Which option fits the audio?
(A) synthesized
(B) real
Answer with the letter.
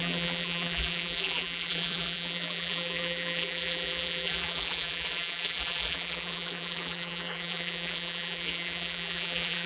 A